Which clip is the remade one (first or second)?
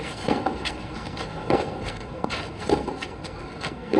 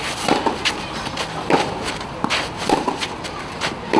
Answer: first